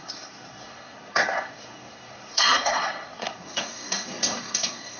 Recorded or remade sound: remade